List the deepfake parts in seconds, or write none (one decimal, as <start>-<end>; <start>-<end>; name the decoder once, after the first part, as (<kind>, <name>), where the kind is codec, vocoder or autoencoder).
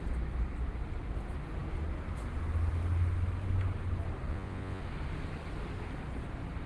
4.3-4.8 (vocoder, Vocos)